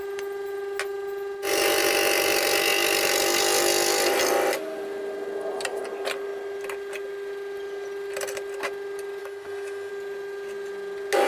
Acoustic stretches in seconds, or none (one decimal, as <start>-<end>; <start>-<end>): 0.0-9.2; 9.9-11.3